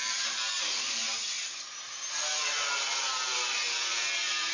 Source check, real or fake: fake